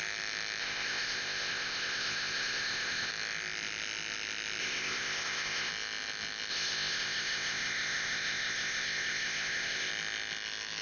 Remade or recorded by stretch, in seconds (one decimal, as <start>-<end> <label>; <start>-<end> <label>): 0.0-0.6 recorded; 0.6-3.1 remade; 3.1-4.6 recorded; 4.6-5.7 remade; 5.7-6.5 recorded; 6.5-9.9 remade; 9.9-10.8 recorded